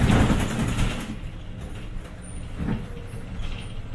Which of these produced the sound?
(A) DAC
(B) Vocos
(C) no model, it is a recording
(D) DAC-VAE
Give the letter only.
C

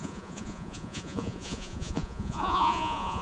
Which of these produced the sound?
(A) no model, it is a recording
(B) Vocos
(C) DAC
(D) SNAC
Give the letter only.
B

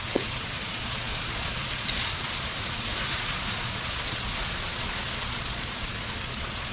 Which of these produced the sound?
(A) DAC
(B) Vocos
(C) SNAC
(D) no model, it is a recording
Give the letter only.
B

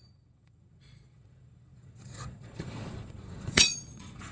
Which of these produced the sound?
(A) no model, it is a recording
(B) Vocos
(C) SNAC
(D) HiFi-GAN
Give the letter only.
B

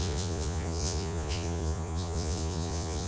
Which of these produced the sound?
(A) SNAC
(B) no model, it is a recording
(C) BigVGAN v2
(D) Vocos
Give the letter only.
D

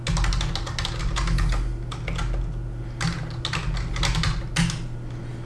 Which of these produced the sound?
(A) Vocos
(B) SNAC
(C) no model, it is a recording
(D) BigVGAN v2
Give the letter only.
C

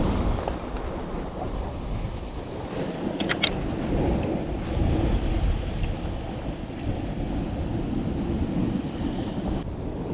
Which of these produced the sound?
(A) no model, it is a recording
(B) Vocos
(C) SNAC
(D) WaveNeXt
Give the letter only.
A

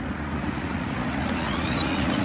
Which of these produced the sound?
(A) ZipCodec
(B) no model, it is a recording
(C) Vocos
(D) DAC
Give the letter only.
C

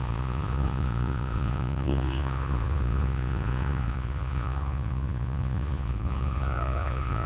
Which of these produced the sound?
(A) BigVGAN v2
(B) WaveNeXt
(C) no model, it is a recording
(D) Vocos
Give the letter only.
D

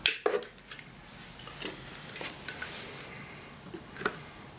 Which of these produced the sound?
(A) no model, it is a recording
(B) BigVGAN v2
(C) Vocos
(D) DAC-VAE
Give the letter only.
A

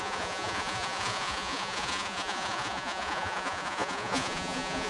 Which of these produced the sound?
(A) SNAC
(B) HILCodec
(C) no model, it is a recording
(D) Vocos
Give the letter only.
D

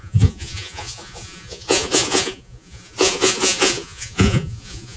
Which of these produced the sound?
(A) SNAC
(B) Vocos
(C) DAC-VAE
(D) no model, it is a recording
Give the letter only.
B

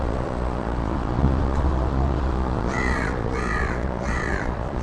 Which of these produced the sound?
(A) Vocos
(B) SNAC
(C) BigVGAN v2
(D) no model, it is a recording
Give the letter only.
A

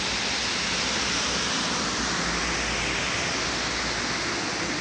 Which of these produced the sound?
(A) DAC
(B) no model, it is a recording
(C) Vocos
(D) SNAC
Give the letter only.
B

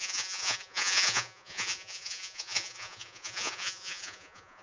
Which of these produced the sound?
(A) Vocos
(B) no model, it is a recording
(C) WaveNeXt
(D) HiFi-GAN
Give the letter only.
A